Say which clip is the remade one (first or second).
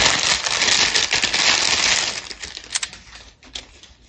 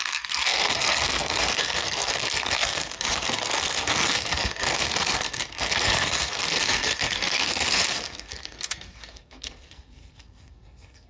second